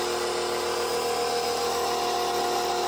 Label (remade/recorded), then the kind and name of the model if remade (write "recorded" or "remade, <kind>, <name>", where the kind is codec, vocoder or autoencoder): recorded